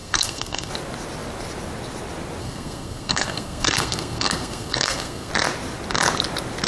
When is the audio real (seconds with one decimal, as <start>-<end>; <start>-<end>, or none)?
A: 0.7-2.4; 5.3-6.7